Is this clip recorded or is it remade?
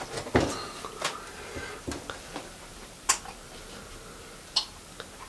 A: recorded